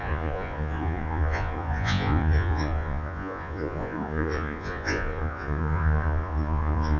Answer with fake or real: fake